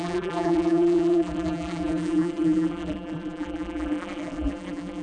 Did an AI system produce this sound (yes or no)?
yes